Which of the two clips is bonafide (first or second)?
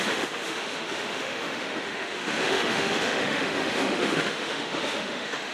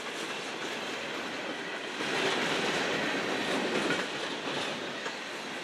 second